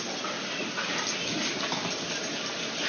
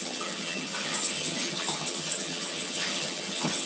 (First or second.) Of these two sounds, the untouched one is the first